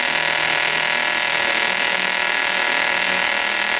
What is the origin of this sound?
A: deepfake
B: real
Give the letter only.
B